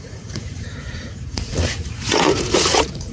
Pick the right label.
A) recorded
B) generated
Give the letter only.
B